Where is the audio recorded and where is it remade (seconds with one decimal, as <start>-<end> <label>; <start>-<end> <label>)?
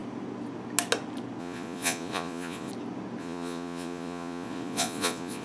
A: 0.0-1.4 recorded; 1.4-2.7 remade; 2.7-3.2 recorded; 3.2-5.4 remade